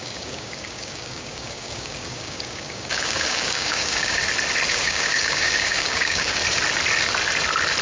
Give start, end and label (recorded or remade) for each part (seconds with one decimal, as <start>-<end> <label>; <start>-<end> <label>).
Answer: 0.0-4.2 remade; 4.2-4.7 recorded; 4.7-6.4 remade; 6.4-7.8 recorded